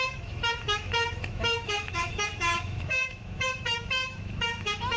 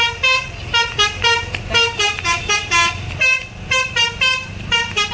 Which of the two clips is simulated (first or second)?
first